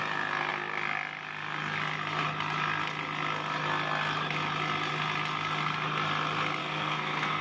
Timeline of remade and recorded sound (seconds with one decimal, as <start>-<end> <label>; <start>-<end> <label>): 0.0-6.6 recorded; 6.6-7.4 remade